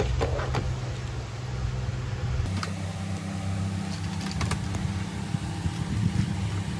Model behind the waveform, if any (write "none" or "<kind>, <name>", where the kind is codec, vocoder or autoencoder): none